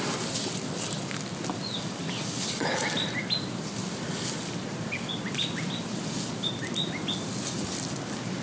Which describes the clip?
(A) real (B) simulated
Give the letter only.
A